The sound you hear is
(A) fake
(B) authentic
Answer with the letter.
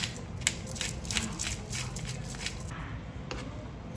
B